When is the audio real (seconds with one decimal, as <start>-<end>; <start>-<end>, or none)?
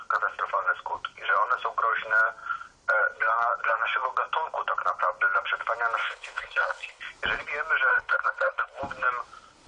0.0-6.0; 7.0-7.9; 8.8-9.7